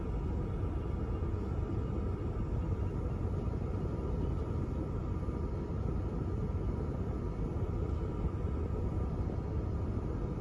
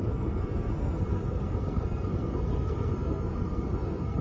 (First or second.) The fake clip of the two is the second